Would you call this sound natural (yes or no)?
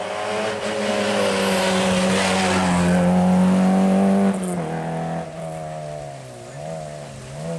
yes